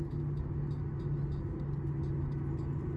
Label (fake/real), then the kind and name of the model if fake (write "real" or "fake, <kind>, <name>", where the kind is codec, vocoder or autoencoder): real